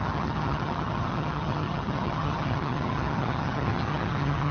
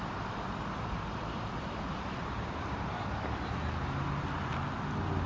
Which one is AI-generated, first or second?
first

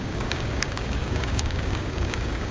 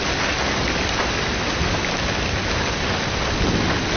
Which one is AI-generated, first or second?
first